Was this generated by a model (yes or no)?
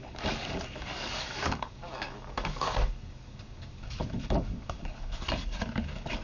yes